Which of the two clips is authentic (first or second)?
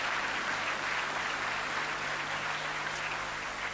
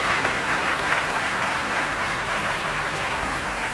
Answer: first